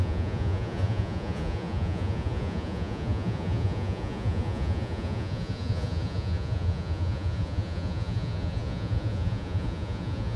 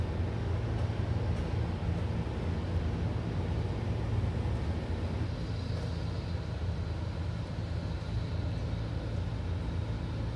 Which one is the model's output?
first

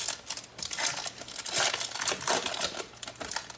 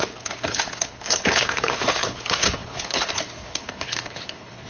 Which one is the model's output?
second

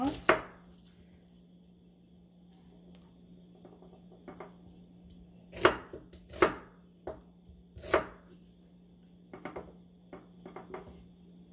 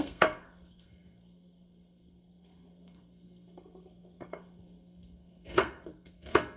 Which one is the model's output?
second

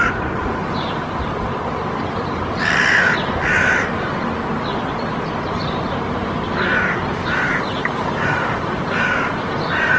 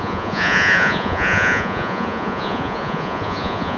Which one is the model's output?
second